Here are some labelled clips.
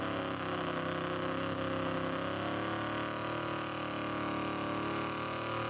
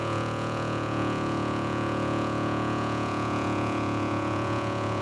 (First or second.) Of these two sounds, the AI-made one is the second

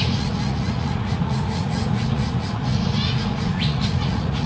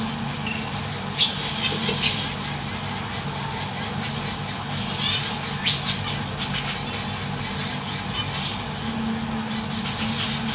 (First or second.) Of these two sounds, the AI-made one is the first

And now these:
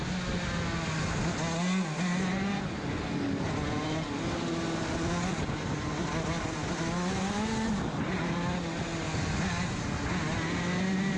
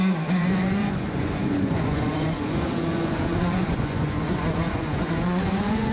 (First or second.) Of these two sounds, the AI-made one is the second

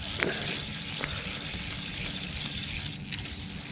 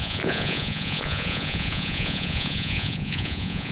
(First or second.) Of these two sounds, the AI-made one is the second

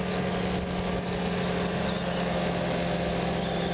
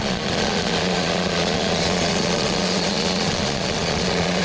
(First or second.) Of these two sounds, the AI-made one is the second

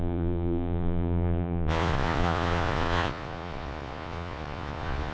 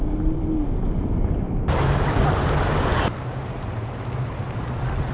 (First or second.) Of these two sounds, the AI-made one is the first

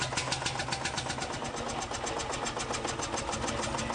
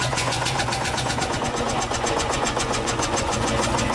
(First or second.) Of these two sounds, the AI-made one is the second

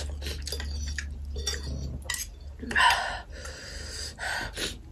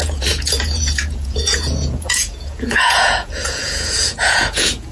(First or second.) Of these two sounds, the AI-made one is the second